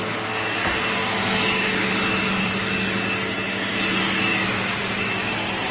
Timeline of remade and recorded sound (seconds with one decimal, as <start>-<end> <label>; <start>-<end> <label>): 0.0-1.0 recorded; 1.0-1.9 remade; 1.9-4.3 recorded; 4.3-4.9 remade; 4.9-5.7 recorded